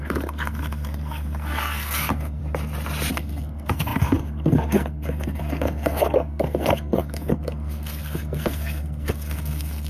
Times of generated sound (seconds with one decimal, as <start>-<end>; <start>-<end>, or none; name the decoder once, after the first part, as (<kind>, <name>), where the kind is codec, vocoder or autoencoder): 0.0-2.4 (codec, SNAC); 3.1-9.9